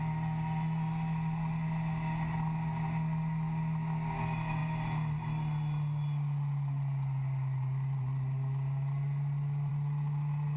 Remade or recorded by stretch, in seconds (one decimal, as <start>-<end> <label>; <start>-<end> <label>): 0.0-10.6 recorded

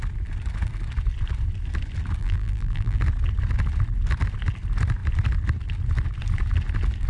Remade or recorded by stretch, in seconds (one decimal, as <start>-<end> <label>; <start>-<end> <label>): 0.0-2.2 recorded; 2.2-3.0 remade; 3.0-7.1 recorded

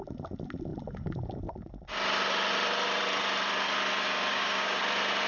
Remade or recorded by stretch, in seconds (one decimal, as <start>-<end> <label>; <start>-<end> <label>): 0.0-4.3 recorded; 4.3-4.8 remade; 4.8-5.3 recorded

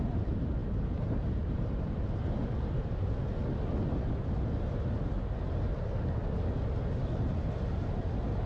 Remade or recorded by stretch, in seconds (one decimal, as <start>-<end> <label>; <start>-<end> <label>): 0.0-8.5 recorded